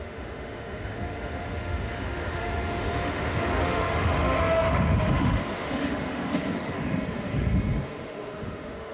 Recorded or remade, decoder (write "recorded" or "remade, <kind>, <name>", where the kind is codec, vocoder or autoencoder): remade, autoencoder, DAC-VAE